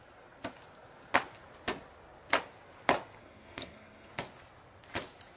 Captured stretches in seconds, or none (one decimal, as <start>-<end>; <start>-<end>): 0.0-3.2; 4.1-5.4